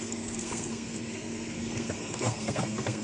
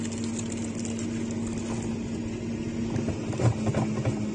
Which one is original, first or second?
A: second